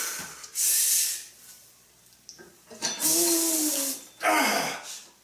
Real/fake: real